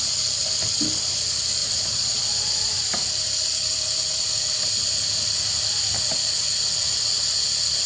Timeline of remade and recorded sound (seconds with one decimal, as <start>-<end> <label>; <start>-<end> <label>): 0.0-1.6 recorded; 1.6-2.8 remade; 2.8-7.9 recorded